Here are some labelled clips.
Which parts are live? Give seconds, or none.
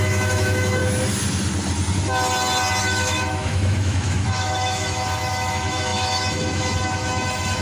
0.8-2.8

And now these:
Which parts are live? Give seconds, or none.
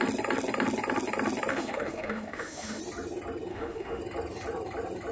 0.0-1.5; 2.8-3.5; 4.0-5.1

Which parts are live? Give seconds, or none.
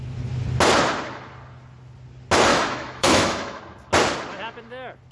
0.0-2.5; 3.6-5.1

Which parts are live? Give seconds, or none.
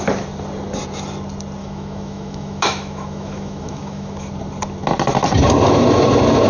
0.0-1.6; 4.3-6.5